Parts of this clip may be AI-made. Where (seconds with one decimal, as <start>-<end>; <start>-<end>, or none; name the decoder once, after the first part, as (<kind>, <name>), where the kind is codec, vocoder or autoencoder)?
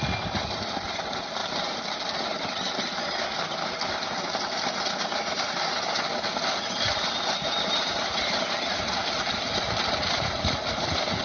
none